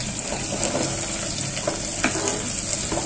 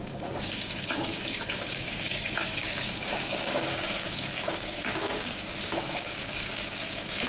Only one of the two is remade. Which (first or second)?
second